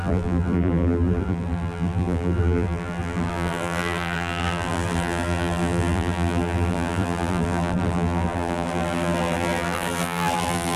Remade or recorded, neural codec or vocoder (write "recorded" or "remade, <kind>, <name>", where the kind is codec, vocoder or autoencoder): remade, vocoder, BigVGAN v2